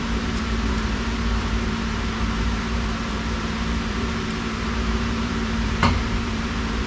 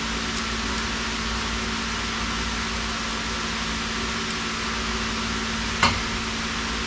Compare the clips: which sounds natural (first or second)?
second